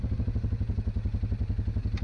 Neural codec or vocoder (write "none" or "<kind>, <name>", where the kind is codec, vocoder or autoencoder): none